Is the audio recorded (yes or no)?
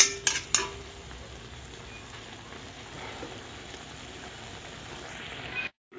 yes